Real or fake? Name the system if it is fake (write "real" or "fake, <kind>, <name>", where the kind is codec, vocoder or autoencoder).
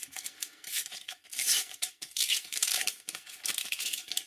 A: fake, codec, SNAC